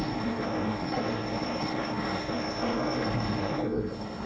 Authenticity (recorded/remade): remade